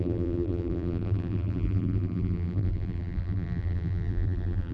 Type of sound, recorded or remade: remade